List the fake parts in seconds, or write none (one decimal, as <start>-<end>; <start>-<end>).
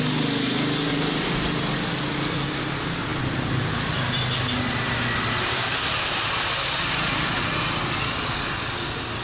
none